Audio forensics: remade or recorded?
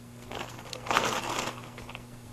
remade